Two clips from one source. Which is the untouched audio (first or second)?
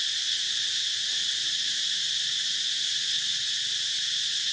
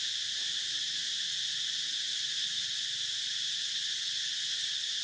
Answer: second